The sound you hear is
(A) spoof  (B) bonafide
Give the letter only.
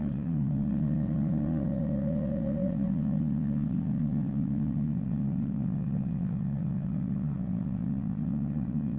A